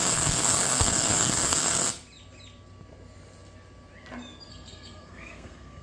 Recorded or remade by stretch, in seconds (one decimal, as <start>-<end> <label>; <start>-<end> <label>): 0.0-1.8 remade; 1.8-4.5 recorded; 4.5-5.8 remade

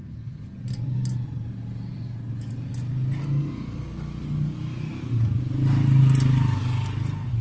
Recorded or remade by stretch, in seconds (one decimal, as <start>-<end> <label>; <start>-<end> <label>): 0.0-7.4 recorded

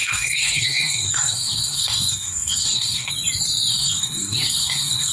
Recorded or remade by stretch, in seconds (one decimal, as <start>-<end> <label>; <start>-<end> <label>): 0.0-3.1 remade; 3.1-3.7 recorded; 3.7-5.1 remade

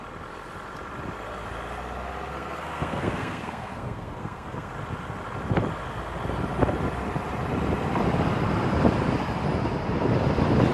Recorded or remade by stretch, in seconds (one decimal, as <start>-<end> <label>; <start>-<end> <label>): 0.0-2.3 recorded; 2.3-4.7 remade; 4.7-10.7 recorded